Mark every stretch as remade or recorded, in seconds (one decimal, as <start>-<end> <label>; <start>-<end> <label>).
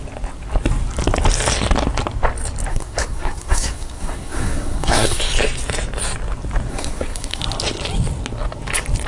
0.0-2.7 recorded; 2.7-5.2 remade; 5.2-6.7 recorded; 6.7-7.4 remade; 7.4-9.1 recorded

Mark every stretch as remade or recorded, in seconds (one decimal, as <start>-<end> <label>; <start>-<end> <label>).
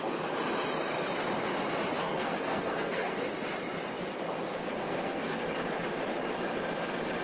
0.0-2.0 recorded; 2.0-3.2 remade; 3.2-4.5 recorded; 4.5-5.4 remade; 5.4-7.2 recorded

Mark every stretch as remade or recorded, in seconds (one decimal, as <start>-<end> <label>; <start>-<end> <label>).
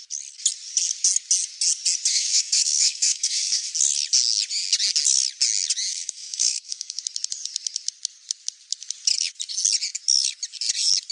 0.0-2.1 recorded; 2.1-3.7 remade; 3.7-5.9 recorded; 5.9-7.0 remade; 7.0-11.1 recorded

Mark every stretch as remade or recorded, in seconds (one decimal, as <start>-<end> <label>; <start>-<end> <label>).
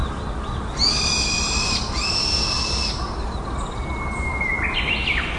0.0-5.4 recorded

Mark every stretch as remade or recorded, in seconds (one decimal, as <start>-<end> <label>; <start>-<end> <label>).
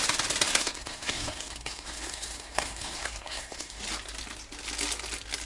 0.0-0.5 recorded; 0.5-3.8 remade; 3.8-5.5 recorded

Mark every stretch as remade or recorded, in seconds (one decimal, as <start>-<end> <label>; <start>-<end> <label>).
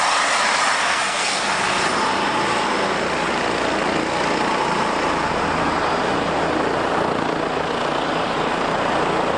0.0-0.8 recorded; 0.8-1.4 remade; 1.4-9.4 recorded